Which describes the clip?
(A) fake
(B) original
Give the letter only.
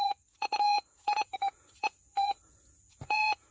A